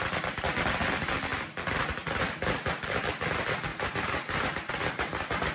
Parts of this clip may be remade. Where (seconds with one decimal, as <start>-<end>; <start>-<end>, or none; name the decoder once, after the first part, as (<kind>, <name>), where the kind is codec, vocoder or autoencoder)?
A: 3.7-4.7 (vocoder, BigVGAN v2)